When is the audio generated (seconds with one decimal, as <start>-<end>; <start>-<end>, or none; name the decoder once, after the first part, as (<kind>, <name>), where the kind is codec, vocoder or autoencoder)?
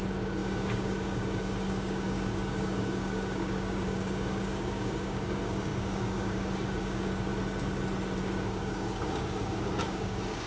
0.0-7.3 (codec, DAC); 8.2-10.5